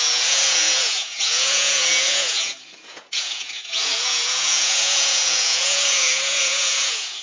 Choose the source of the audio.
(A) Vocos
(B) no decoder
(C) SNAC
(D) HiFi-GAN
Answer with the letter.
A